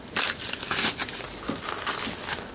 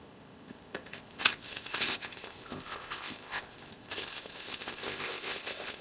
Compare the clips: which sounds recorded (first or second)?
first